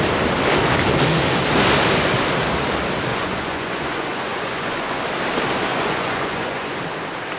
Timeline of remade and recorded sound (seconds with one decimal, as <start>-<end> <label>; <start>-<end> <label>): 0.0-3.1 recorded; 3.1-5.0 remade; 5.0-5.7 recorded; 5.7-6.8 remade; 6.8-7.4 recorded